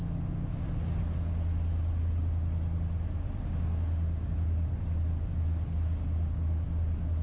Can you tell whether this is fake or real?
real